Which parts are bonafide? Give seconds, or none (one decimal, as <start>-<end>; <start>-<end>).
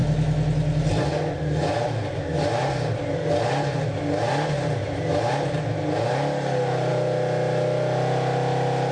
0.0-8.9